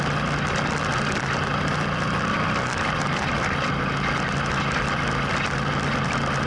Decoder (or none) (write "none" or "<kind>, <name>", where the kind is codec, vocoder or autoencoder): none